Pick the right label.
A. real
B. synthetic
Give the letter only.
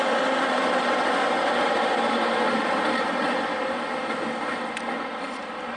B